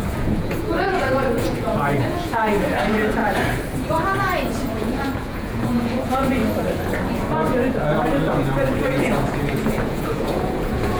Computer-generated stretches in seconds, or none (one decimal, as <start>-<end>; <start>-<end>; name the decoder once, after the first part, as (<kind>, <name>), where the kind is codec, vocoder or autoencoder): 0.0-3.2 (vocoder, Vocos); 4.5-6.4; 7.6-11.0